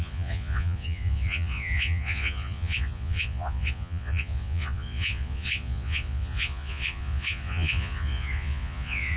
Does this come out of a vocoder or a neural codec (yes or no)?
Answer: yes